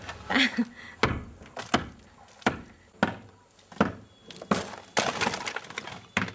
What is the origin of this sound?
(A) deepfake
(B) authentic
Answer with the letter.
B